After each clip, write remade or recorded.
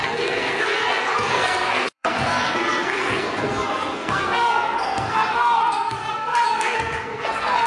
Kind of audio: remade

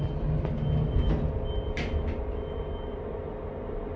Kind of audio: recorded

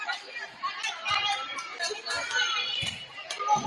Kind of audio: remade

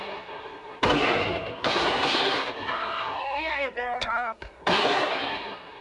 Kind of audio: remade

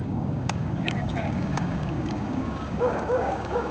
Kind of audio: remade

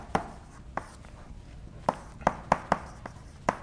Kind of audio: recorded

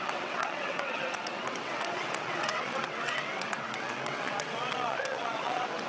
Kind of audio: remade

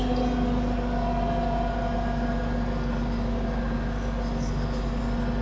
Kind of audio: recorded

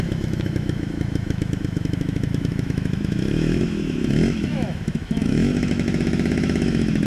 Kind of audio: remade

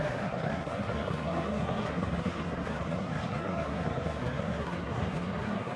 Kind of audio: remade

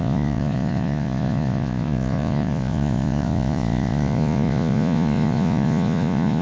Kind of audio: remade